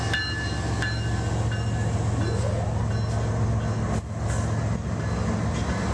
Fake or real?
real